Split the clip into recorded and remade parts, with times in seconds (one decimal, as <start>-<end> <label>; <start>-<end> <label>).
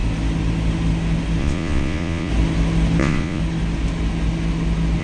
0.0-1.4 recorded; 1.4-2.3 remade; 2.3-3.0 recorded; 3.0-3.4 remade; 3.4-5.0 recorded